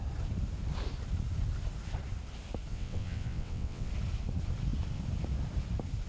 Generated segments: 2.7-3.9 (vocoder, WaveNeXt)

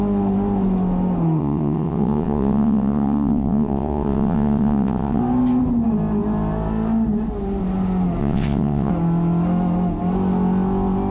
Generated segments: 1.4-5.2 (vocoder, WaveNeXt); 8.2-8.9